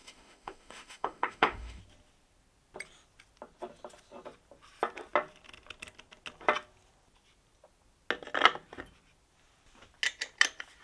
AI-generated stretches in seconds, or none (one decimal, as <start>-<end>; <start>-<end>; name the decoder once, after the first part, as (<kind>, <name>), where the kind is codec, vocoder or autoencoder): 0.0-1.8 (autoencoder, DAC-VAE)